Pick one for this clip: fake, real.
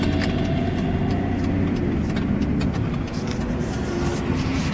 real